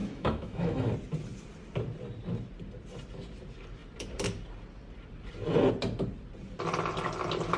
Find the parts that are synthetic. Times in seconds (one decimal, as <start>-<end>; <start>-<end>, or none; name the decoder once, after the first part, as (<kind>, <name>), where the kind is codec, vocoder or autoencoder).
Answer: 0.0-0.9 (autoencoder, DAC-VAE)